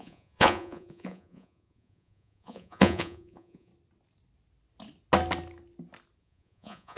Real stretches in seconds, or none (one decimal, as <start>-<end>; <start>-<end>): 3.7-6.2